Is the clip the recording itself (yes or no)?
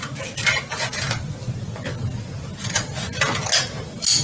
yes